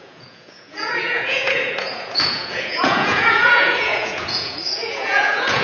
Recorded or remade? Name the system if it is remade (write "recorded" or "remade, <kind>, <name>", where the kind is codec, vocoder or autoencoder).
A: remade, vocoder, Vocos